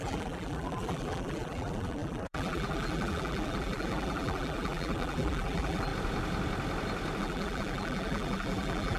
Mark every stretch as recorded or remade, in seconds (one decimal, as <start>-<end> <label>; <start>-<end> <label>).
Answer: 0.0-5.9 remade; 5.9-7.2 recorded; 7.2-9.0 remade